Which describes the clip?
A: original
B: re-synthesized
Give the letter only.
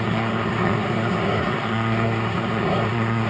B